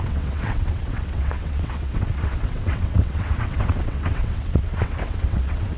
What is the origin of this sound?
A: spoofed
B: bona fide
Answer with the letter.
A